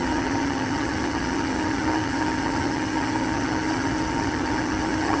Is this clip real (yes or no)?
no